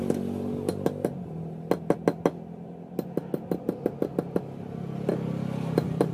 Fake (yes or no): no